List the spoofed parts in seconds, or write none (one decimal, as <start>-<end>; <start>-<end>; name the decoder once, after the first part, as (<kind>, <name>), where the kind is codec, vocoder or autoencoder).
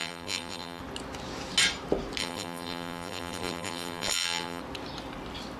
0.0-0.8 (vocoder, BigVGAN v2); 2.2-4.6